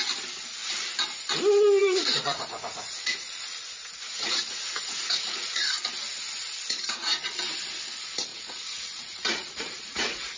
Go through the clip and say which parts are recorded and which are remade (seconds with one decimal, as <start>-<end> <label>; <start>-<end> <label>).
0.0-1.8 recorded; 1.8-5.7 remade; 5.7-8.3 recorded; 8.3-10.4 remade

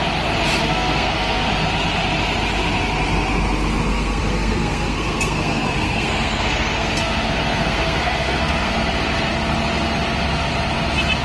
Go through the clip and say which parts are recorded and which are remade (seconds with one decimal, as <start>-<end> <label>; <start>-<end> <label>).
0.0-0.6 recorded; 0.6-1.5 remade; 1.5-3.9 recorded; 3.9-8.7 remade; 8.7-11.2 recorded

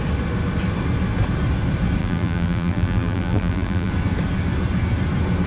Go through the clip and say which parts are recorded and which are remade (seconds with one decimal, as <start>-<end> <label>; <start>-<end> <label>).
0.0-2.0 recorded; 2.0-3.9 remade; 3.9-5.5 recorded

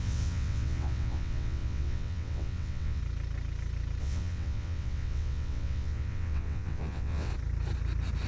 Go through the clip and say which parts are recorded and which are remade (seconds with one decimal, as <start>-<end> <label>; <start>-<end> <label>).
0.0-3.0 remade; 3.0-4.0 recorded; 4.0-7.3 remade; 7.3-8.3 recorded